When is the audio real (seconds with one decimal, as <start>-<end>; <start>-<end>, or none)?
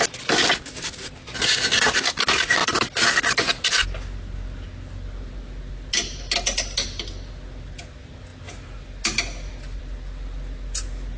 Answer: 0.0-11.2